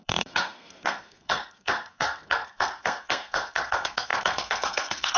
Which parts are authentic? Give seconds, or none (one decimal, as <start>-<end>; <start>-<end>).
none